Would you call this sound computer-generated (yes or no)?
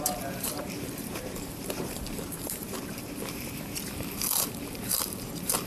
yes